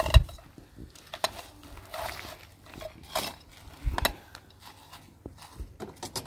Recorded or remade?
recorded